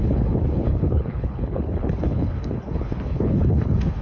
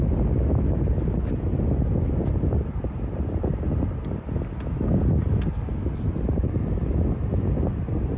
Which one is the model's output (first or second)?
first